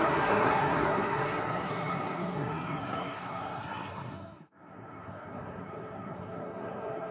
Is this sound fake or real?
fake